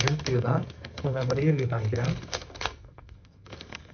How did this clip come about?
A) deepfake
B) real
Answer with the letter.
A